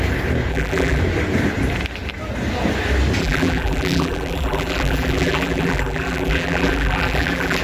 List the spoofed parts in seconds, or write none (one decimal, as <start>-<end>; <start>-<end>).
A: 0.5-1.0; 3.2-7.6

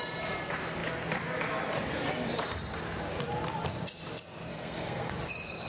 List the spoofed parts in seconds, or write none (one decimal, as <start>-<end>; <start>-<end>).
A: 4.5-5.1

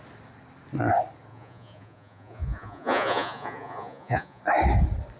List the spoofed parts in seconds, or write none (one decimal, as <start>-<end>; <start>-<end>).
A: 1.3-4.4

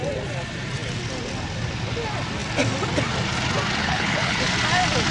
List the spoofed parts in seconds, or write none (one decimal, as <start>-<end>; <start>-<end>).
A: 3.8-4.5

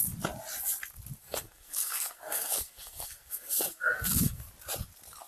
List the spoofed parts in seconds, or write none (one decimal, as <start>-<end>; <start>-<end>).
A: 1.2-4.4

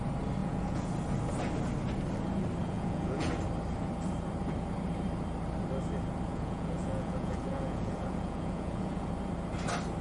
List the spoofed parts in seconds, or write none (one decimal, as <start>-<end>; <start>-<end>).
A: 0.4-0.9; 2.6-3.3; 6.3-9.1

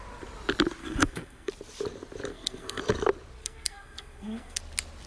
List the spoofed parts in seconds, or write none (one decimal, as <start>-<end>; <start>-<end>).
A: 0.8-1.5; 2.3-2.8; 3.4-4.6

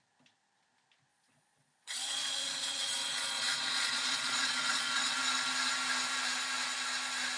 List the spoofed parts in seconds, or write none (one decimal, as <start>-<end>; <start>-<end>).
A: 1.1-5.2